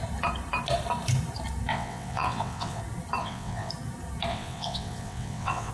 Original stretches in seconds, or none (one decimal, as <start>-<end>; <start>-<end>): 0.0-1.7; 2.8-3.2; 3.7-4.3